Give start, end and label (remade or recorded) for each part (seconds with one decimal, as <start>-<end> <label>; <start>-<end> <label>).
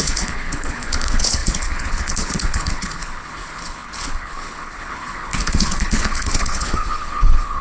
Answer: 0.0-7.6 remade